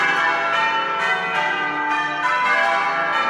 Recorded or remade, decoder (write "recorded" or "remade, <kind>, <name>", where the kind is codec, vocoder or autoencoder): recorded